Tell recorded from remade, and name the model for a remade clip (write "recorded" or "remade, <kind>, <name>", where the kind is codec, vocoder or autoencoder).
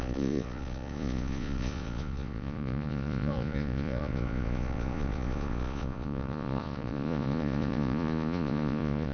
remade, vocoder, Vocos